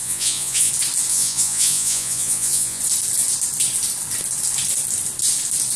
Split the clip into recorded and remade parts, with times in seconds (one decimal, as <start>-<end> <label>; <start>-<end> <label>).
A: 0.0-0.7 remade; 0.7-1.1 recorded; 1.1-2.8 remade; 2.8-5.8 recorded